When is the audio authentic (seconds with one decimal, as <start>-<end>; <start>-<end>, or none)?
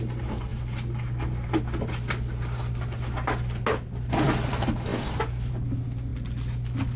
0.0-4.9; 5.5-7.0